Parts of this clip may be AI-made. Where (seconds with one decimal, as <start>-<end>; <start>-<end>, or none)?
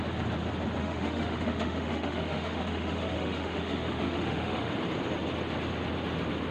0.8-4.7